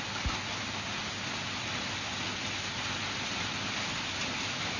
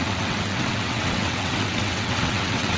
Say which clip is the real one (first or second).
first